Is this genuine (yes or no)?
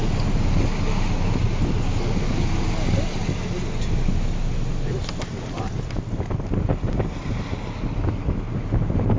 yes